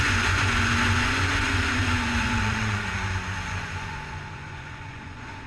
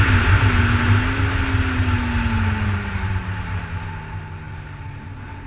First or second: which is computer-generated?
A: first